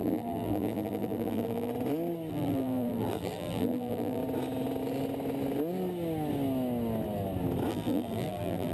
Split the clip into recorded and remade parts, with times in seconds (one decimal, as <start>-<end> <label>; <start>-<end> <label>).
0.0-1.7 remade; 1.7-2.3 recorded; 2.3-4.2 remade; 4.2-7.7 recorded; 7.7-8.7 remade